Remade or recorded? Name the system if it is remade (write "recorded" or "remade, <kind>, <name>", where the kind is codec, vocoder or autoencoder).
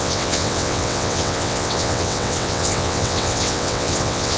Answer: remade, vocoder, WaveNeXt